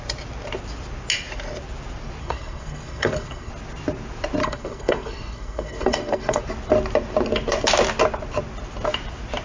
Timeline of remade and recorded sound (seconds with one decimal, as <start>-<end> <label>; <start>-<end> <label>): 0.0-2.2 recorded; 2.2-3.5 remade; 3.5-4.4 recorded; 4.4-6.4 remade; 6.4-9.4 recorded